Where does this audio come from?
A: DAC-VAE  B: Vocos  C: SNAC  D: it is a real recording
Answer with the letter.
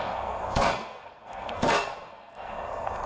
C